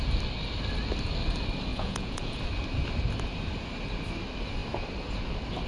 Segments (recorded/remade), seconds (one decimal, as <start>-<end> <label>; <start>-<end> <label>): 0.0-1.7 recorded; 1.7-2.4 remade; 2.4-5.7 recorded

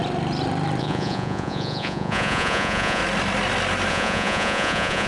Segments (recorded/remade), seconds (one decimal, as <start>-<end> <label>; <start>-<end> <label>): 0.0-0.8 recorded; 0.8-3.0 remade; 3.0-3.9 recorded; 3.9-5.1 remade

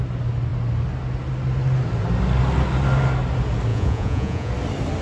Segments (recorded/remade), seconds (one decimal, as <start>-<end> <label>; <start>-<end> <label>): 0.0-3.7 recorded; 3.7-4.5 remade; 4.5-5.0 recorded

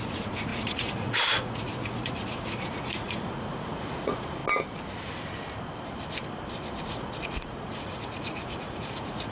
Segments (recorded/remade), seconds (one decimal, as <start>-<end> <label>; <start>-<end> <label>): 0.0-4.4 remade; 4.4-6.8 recorded; 6.8-9.3 remade

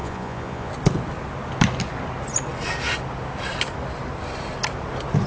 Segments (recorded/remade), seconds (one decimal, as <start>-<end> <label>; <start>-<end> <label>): 0.0-0.7 remade; 0.7-5.3 recorded

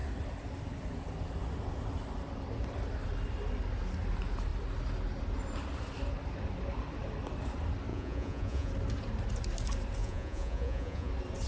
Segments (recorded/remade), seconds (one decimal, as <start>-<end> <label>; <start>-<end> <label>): 0.0-7.9 recorded; 7.9-8.7 remade; 8.7-10.0 recorded; 10.0-11.1 remade; 11.1-11.5 recorded

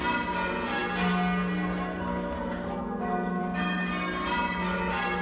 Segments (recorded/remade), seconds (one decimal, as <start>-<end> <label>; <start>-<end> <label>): 0.0-5.2 recorded